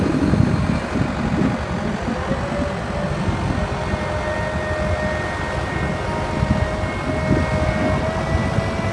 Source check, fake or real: real